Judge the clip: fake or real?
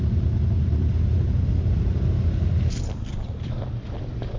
real